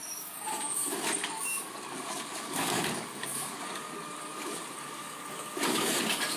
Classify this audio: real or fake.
fake